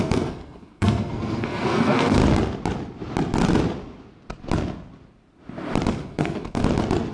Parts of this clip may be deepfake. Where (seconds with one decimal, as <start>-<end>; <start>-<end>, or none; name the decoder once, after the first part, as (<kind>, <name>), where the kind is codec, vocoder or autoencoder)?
0.0-2.2 (codec, SNAC); 5.9-6.6